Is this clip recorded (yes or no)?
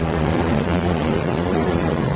no